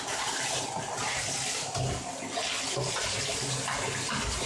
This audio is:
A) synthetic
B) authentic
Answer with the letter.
B